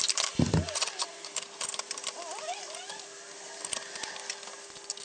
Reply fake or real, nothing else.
real